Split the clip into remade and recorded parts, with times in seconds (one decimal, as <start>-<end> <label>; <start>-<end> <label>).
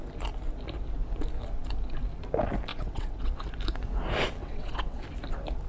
0.0-2.7 recorded; 2.7-3.3 remade; 3.3-4.4 recorded; 4.4-5.0 remade; 5.0-5.7 recorded